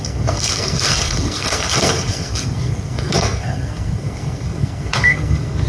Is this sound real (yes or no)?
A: no